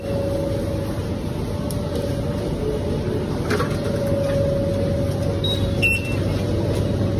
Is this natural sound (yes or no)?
yes